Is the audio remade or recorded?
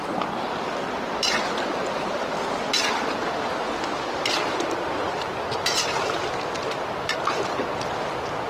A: recorded